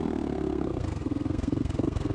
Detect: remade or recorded remade